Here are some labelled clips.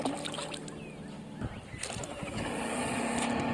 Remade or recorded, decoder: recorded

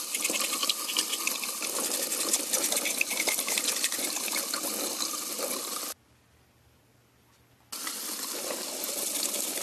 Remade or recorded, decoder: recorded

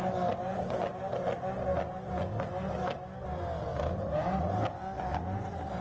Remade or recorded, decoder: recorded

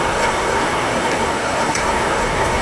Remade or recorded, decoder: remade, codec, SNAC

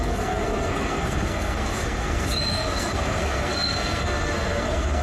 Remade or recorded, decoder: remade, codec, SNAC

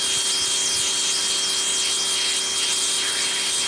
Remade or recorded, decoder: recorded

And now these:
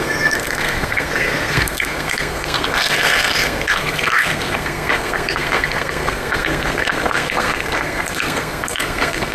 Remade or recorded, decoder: remade, codec, SNAC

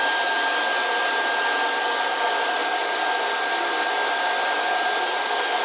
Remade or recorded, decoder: recorded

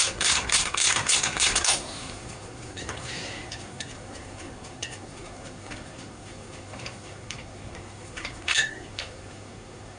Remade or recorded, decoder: remade, codec, SNAC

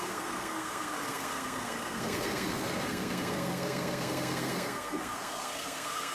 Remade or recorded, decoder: remade, codec, SNAC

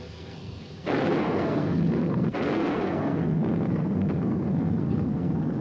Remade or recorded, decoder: remade, codec, SNAC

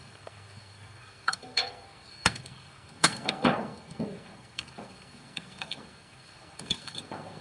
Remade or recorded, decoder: remade, codec, SNAC